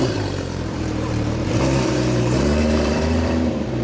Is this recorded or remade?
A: remade